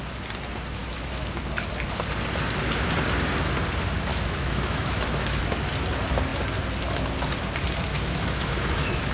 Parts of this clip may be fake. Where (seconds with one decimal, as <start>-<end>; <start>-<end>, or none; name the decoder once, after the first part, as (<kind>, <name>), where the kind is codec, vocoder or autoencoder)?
0.8-1.4 (autoencoder, DAC-VAE); 4.1-5.4; 7.9-9.1